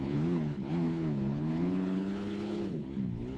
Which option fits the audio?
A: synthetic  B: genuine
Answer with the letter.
A